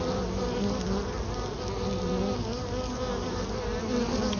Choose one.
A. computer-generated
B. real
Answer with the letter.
B